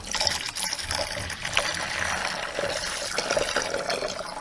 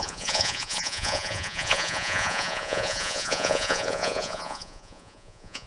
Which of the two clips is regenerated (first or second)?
second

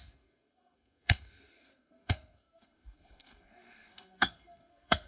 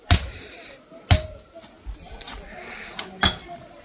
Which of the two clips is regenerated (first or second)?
first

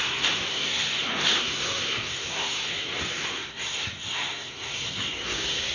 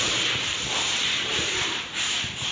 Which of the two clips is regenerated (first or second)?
first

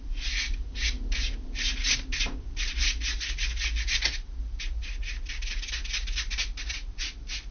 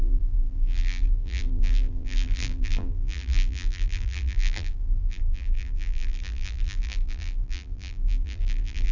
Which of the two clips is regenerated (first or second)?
second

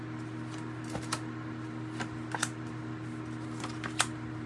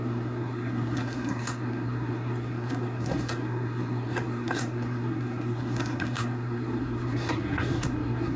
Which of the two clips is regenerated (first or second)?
second